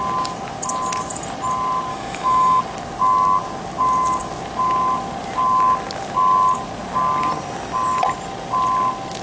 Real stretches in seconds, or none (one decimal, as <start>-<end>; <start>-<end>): 0.0-1.9; 2.6-9.2